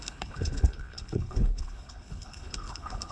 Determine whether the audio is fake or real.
fake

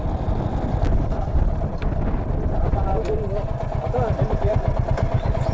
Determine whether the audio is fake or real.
real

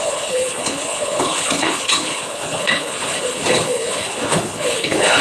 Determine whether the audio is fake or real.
fake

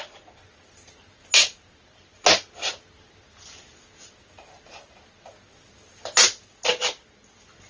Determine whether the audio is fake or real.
real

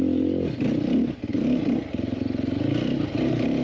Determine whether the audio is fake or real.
real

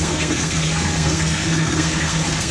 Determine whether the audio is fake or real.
fake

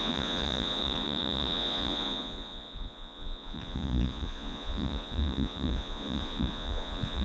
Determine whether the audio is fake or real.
fake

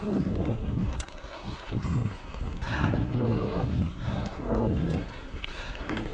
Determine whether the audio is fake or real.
fake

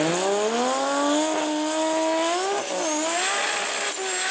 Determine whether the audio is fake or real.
real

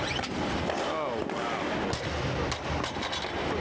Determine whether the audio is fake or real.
real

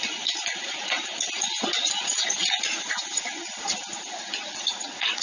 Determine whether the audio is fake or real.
fake